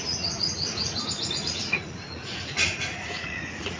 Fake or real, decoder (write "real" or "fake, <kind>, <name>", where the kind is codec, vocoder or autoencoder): fake, vocoder, Vocos